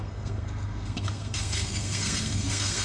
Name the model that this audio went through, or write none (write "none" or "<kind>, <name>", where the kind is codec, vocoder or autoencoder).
codec, SNAC